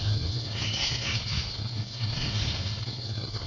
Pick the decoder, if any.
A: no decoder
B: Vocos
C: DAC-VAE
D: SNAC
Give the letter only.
D